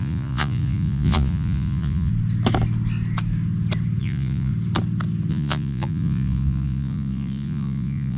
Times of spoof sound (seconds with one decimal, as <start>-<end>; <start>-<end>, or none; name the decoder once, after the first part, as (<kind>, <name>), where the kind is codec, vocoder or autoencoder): 0.0-2.1 (vocoder, Vocos); 4.0-4.5; 5.3-8.2